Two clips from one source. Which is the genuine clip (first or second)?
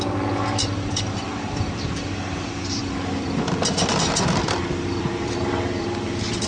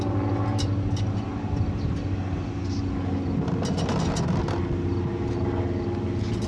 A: second